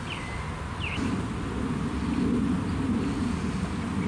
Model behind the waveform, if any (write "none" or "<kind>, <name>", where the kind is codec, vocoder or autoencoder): none